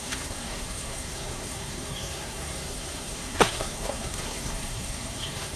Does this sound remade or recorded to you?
remade